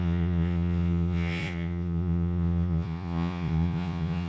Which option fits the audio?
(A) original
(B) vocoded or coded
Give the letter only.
B